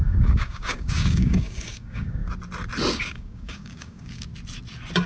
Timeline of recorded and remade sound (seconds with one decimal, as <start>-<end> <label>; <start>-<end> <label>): 0.0-2.2 remade; 2.2-2.9 recorded; 2.9-4.3 remade; 4.3-5.1 recorded